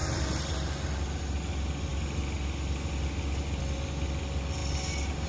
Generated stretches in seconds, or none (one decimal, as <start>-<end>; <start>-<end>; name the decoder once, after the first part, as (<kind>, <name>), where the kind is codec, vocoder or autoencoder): 0.0-0.5 (vocoder, BigVGAN v2)